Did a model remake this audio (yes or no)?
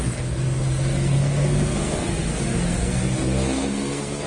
yes